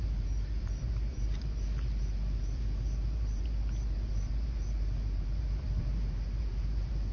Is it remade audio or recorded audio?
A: remade